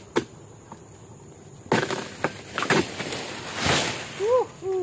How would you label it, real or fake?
real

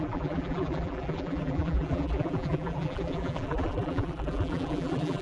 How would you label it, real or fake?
fake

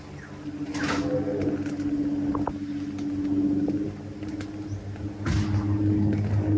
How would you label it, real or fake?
real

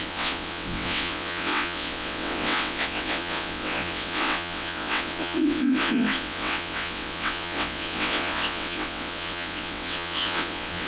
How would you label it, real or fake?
fake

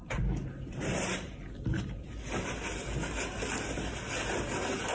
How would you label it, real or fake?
real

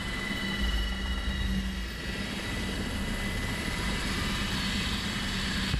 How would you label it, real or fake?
real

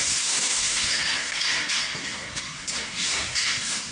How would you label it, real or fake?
fake